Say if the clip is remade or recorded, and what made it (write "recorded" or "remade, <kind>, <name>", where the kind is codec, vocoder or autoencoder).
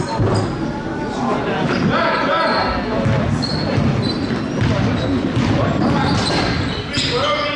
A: recorded